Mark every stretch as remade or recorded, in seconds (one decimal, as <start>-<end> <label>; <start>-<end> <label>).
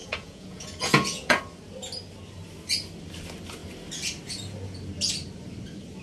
0.0-1.4 remade; 1.4-6.0 recorded